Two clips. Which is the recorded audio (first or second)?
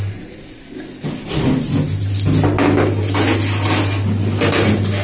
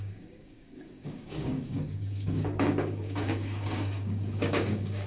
first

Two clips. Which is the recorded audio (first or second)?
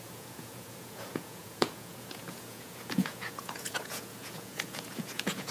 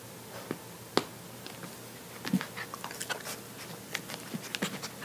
second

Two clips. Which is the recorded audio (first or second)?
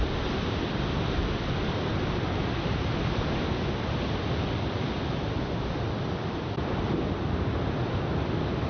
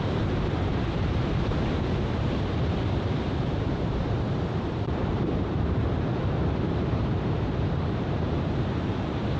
first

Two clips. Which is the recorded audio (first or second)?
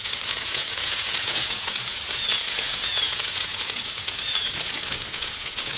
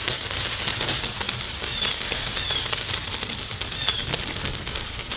second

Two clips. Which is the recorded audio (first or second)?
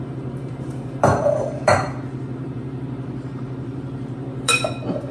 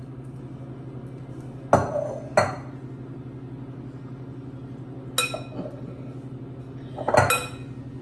second